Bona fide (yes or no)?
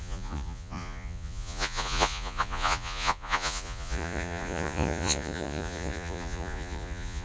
no